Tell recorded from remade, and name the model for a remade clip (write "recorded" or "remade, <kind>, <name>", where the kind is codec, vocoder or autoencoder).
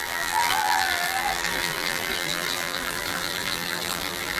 remade, vocoder, BigVGAN v2